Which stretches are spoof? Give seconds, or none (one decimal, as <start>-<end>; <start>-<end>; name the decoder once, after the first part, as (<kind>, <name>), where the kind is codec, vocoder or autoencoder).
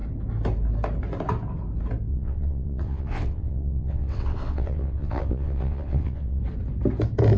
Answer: 2.1-6.4 (vocoder, WaveNeXt)